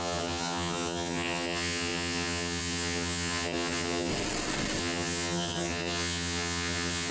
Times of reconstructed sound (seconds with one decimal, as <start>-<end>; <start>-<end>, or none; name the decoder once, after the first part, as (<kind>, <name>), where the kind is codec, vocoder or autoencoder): 0.0-4.1 (vocoder, HiFi-GAN); 4.8-7.1